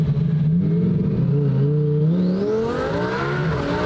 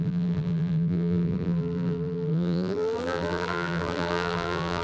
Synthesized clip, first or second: second